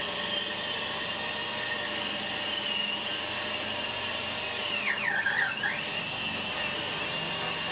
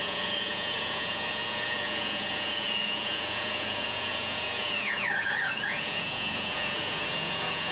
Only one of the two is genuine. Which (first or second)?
first